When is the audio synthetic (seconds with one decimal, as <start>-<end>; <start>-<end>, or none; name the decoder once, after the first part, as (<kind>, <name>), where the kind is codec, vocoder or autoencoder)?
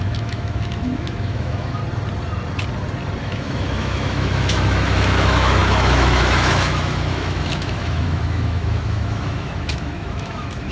0.0-1.8 (autoencoder, DAC-VAE); 3.2-10.7